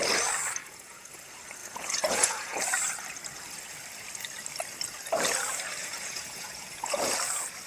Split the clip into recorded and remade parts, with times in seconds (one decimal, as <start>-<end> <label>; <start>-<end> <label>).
0.0-0.6 recorded; 0.6-1.1 remade; 1.1-1.6 recorded; 1.6-2.6 remade; 2.6-5.8 recorded; 5.8-7.1 remade; 7.1-7.7 recorded